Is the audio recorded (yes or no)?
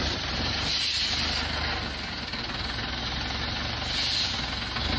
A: yes